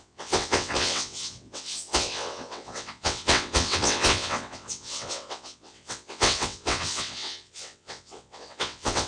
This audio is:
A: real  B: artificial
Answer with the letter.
B